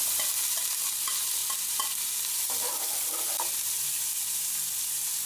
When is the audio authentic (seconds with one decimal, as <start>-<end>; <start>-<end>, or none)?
0.0-1.4; 4.2-5.3